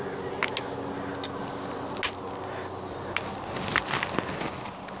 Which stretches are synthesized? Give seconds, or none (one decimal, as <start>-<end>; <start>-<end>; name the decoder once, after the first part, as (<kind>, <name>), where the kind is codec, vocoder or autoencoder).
none